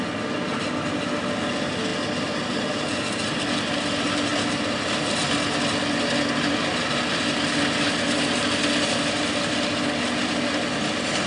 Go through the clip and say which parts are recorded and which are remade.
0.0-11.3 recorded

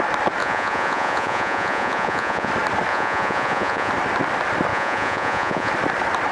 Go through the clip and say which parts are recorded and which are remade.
0.0-0.4 recorded; 0.4-2.5 remade; 2.5-2.9 recorded; 2.9-3.9 remade; 3.9-4.7 recorded; 4.7-5.7 remade; 5.7-6.3 recorded

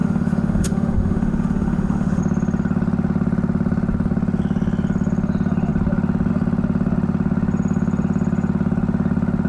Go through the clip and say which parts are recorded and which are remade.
0.0-2.2 remade; 2.2-9.5 recorded

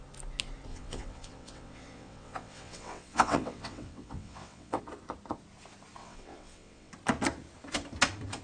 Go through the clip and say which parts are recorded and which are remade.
0.0-0.7 recorded; 0.7-4.8 remade; 4.8-6.0 recorded; 6.0-6.9 remade; 6.9-8.4 recorded